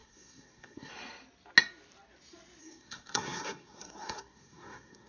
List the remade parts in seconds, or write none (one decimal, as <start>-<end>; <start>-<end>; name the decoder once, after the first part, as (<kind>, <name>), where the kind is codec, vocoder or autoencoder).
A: 0.0-0.9 (codec, SNAC); 2.6-5.1